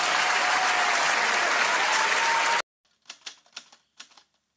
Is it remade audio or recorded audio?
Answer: recorded